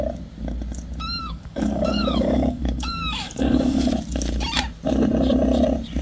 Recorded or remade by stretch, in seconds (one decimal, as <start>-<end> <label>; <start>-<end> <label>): 0.0-1.2 recorded; 1.2-3.9 remade; 3.9-6.0 recorded